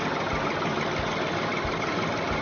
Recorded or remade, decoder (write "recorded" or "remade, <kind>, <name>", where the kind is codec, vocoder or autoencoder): recorded